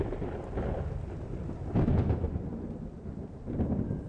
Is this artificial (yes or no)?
no